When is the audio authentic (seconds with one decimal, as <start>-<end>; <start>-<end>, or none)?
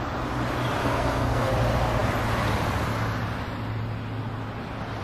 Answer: 0.0-0.8; 1.5-5.0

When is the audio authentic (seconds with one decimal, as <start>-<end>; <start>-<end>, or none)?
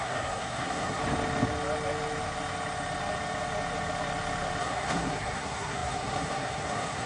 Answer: 1.0-4.6